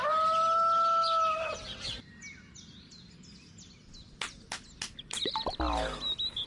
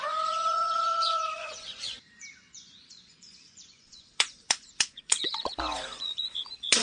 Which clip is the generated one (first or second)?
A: second